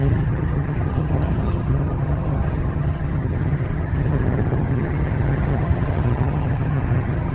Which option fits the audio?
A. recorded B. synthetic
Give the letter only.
B